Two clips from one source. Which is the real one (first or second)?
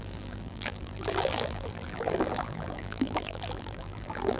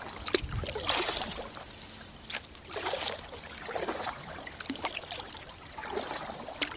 second